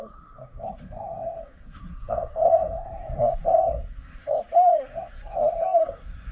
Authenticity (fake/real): fake